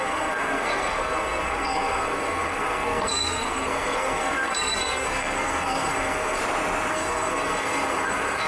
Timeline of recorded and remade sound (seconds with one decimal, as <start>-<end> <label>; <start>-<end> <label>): 0.0-6.4 remade; 6.4-6.9 recorded; 6.9-8.5 remade